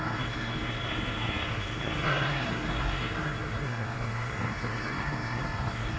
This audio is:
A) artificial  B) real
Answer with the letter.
A